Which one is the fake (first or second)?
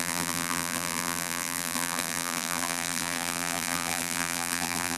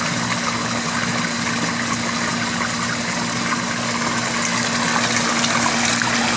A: first